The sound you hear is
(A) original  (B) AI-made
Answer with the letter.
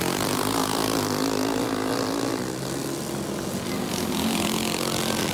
A